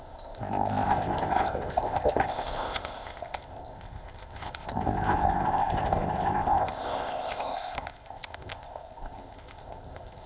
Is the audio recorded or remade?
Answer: remade